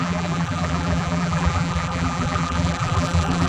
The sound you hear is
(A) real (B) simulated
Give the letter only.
B